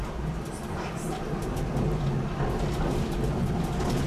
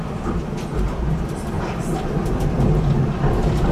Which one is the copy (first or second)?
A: second